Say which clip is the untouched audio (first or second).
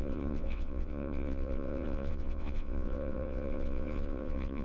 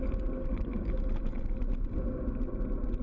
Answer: second